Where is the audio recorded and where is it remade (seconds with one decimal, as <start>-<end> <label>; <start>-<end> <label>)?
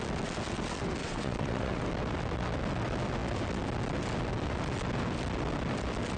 0.0-1.0 recorded; 1.0-1.8 remade; 1.8-6.2 recorded